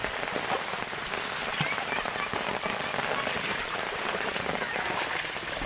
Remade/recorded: recorded